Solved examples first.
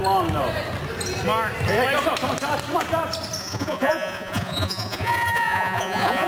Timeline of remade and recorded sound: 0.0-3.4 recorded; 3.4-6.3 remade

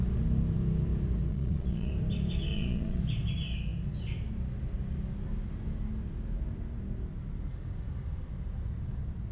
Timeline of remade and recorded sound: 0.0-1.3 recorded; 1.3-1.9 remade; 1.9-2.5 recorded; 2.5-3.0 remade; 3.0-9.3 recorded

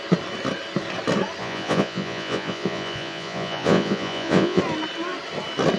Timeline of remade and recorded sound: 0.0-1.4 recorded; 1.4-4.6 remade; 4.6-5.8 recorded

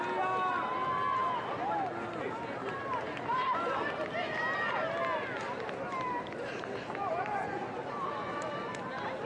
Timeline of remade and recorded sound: 0.0-9.3 recorded

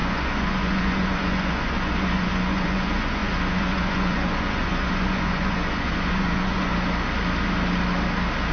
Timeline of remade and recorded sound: 0.0-6.7 remade; 6.7-8.5 recorded

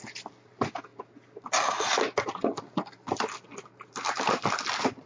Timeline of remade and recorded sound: 0.0-5.1 recorded

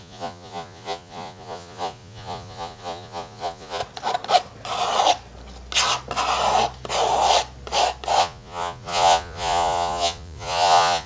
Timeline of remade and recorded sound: 0.0-3.8 remade; 3.8-8.2 recorded; 8.2-11.1 remade